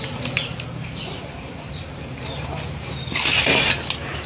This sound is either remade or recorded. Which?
recorded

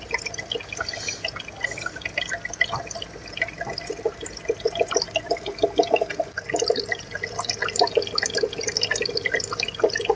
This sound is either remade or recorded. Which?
recorded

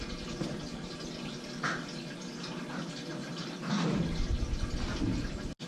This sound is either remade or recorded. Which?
recorded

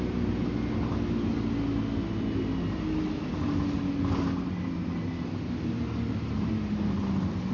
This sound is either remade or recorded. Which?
recorded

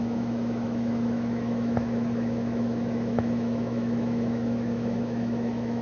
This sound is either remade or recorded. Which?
remade